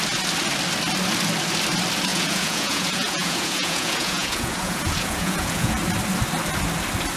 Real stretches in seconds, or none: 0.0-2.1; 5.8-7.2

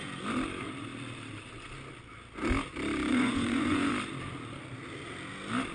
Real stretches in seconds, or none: 0.0-3.1; 3.9-5.7

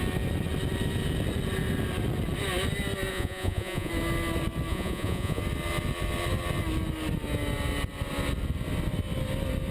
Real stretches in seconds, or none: 0.0-3.1; 3.9-4.7; 5.4-9.7